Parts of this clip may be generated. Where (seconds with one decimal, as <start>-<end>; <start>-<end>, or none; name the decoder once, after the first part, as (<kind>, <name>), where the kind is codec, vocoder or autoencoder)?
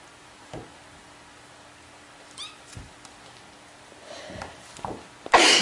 none